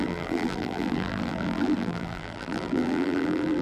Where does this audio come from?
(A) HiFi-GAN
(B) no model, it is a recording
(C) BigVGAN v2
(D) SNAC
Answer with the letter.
C